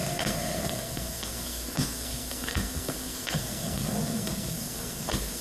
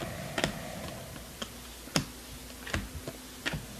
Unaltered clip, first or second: second